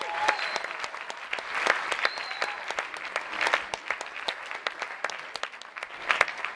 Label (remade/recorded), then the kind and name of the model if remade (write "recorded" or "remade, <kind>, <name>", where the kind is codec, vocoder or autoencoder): recorded